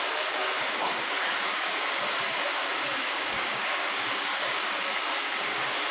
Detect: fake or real fake